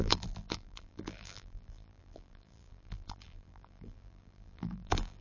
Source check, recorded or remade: remade